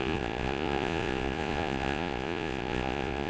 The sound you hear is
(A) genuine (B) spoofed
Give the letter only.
B